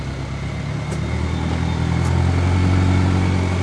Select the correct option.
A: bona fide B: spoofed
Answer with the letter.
A